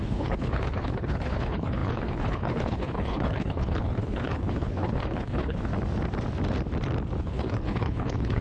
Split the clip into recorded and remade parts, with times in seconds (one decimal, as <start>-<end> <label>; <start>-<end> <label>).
0.0-5.7 remade; 5.7-7.2 recorded; 7.2-8.4 remade